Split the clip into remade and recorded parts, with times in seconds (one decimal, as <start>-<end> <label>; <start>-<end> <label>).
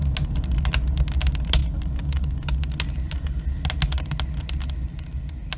0.0-5.6 recorded